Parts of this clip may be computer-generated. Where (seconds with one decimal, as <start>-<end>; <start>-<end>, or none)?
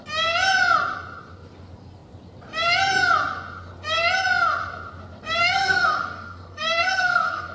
5.4-7.5